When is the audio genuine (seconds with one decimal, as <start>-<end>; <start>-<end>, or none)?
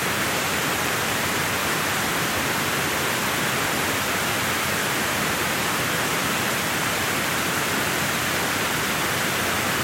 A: 1.0-1.6; 2.5-4.8; 6.2-9.8